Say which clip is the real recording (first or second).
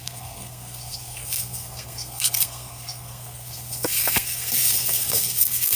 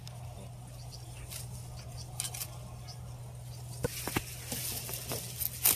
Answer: second